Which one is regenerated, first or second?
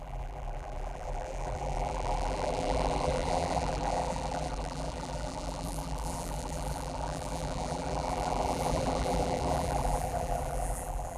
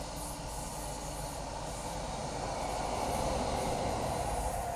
first